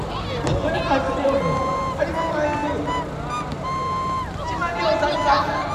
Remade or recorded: recorded